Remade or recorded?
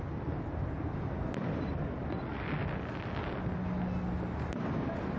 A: recorded